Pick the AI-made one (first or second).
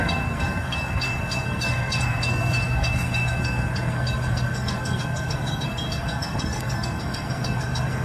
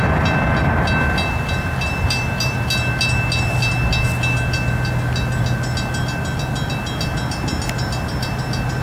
first